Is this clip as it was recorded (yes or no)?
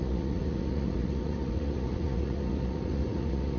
no